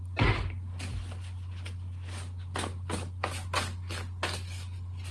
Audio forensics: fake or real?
real